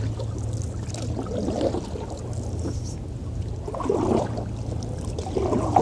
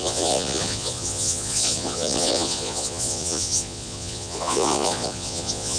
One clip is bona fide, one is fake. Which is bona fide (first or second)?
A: first